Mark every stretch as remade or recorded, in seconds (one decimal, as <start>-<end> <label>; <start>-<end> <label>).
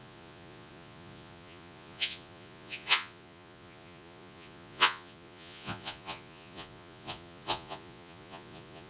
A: 0.0-8.9 remade